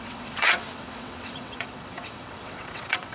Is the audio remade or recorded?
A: remade